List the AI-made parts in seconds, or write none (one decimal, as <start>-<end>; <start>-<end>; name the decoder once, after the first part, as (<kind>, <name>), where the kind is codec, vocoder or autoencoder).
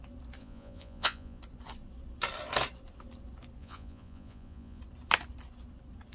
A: 0.4-1.4 (vocoder, Vocos); 3.6-4.8